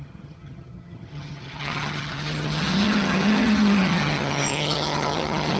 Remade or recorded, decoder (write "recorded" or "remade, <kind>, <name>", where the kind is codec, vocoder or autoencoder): remade, vocoder, HiFi-GAN